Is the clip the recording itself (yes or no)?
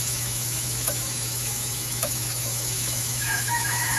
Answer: no